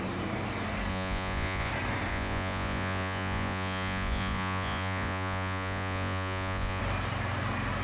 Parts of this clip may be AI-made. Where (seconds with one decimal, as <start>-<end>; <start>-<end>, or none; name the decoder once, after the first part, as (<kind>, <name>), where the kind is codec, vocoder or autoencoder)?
0.9-1.7 (vocoder, Vocos); 2.1-6.8